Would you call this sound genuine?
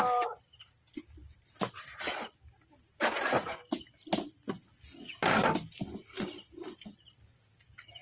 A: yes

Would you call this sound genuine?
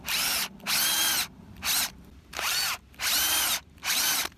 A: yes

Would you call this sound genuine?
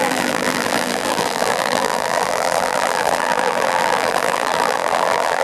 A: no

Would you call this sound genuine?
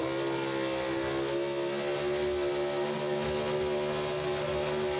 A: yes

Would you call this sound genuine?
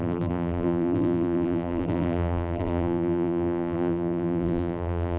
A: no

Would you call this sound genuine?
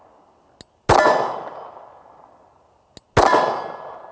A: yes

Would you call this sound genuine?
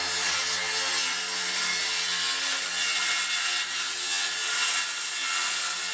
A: yes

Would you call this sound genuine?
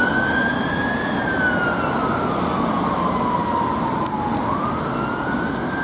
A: yes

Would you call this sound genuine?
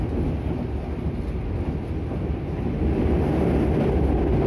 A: yes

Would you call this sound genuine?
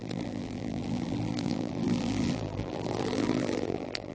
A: no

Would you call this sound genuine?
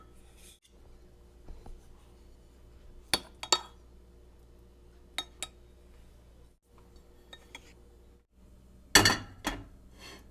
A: yes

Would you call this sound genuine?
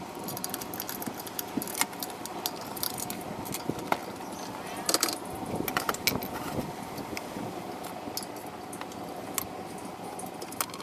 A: yes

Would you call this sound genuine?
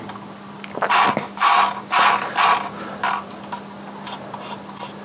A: yes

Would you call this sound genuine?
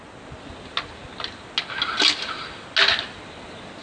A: yes